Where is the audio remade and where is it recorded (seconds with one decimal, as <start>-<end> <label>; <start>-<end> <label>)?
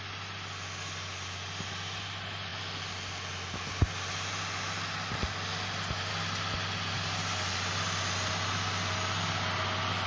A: 0.0-10.1 recorded